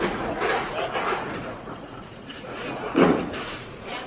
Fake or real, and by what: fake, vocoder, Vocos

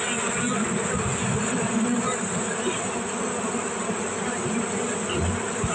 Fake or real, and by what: real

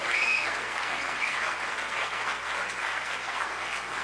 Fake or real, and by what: fake, codec, SNAC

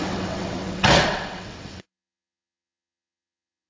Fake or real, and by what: fake, vocoder, WaveNeXt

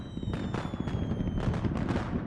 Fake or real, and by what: real